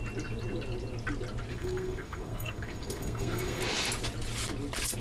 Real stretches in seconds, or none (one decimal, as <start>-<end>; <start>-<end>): 0.0-1.5; 3.6-5.0